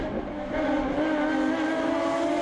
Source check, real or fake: real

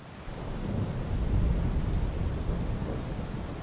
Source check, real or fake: real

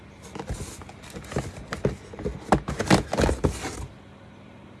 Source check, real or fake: real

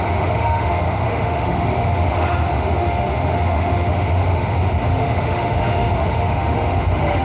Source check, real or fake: fake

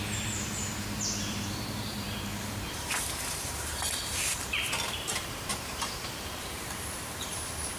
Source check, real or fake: fake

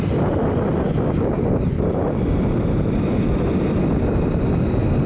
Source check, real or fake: real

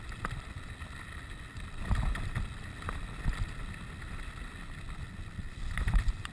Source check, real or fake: real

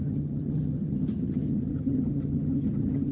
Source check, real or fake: fake